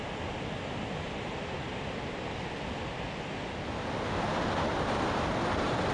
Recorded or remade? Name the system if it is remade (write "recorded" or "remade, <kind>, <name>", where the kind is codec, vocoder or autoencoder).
recorded